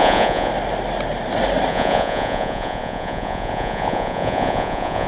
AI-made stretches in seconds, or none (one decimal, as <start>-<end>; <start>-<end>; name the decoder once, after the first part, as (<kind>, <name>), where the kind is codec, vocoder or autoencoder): 0.0-0.5 (vocoder, Vocos); 1.7-5.1